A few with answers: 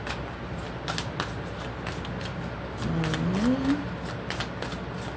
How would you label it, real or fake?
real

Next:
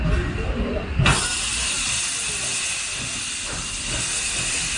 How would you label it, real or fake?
real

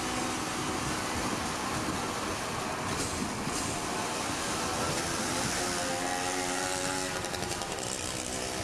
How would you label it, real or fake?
real